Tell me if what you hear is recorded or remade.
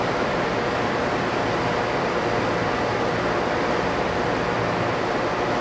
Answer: recorded